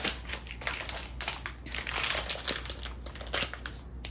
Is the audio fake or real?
real